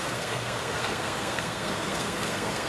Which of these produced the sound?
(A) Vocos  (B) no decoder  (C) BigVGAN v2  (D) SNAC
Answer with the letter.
D